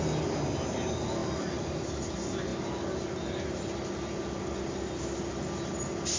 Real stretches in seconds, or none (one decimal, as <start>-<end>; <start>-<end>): 0.0-1.2; 1.7-6.2